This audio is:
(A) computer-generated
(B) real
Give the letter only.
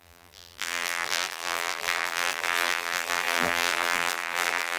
A